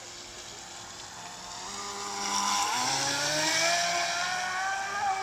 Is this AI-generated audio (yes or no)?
no